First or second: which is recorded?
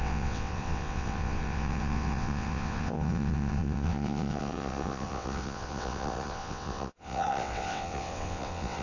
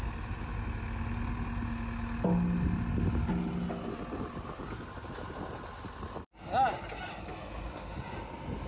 second